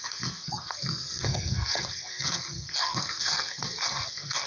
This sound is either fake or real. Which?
fake